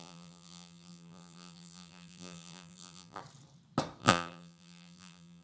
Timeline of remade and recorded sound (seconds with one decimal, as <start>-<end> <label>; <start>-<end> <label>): 0.0-3.2 remade; 3.2-4.0 recorded; 4.0-5.4 remade